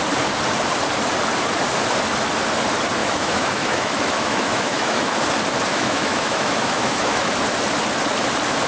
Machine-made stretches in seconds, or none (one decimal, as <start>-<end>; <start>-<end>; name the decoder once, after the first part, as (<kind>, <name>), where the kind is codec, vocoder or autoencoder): 3.0-5.2 (autoencoder, DAC-VAE); 5.7-7.3